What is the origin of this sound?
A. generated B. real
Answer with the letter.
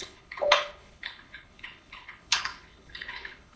A